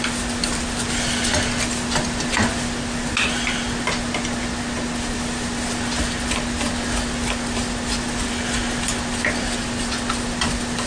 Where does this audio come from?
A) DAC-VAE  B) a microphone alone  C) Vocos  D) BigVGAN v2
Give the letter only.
B